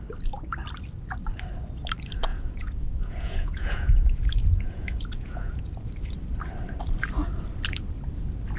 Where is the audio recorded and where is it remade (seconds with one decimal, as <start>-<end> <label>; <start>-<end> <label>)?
0.0-2.3 recorded; 2.3-5.6 remade; 5.6-8.6 recorded